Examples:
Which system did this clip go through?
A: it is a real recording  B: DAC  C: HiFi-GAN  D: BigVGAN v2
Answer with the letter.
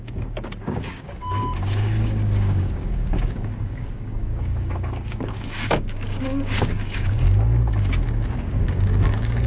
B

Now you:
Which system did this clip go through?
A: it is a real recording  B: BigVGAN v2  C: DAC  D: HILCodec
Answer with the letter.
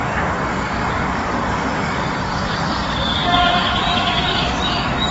C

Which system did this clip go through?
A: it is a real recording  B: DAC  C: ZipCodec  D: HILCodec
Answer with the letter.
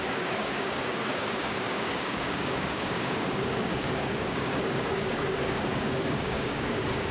B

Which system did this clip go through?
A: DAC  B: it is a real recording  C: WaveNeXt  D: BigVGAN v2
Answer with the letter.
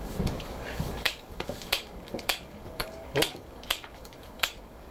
A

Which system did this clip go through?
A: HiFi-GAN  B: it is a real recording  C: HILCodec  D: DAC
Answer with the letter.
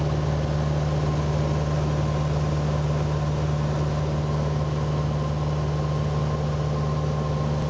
B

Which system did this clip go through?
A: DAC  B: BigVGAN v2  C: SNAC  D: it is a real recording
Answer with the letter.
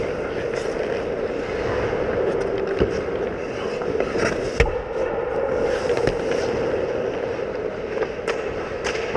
D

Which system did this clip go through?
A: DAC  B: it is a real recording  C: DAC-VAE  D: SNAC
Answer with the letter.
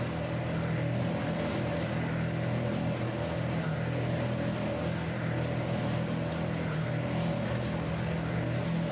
B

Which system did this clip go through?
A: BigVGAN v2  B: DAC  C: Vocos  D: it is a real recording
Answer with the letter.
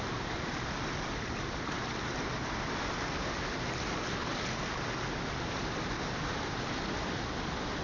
D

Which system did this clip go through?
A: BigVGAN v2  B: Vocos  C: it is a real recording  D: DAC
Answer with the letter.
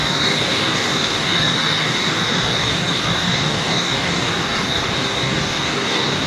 D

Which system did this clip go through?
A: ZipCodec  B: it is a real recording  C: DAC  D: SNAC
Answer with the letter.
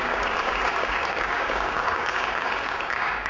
C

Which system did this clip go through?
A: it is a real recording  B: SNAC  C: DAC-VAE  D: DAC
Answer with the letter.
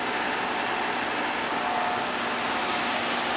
A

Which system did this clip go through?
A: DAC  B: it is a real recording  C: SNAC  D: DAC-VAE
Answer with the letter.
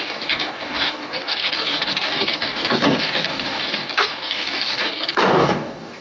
A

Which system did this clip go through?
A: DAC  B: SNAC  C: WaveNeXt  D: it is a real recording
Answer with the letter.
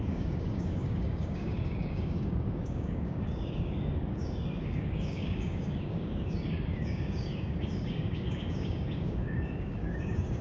A